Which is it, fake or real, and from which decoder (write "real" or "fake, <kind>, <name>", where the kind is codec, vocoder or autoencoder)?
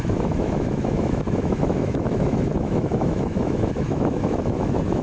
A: fake, autoencoder, DAC-VAE